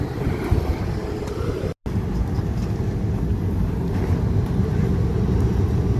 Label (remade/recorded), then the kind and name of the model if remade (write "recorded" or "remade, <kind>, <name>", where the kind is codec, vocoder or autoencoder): recorded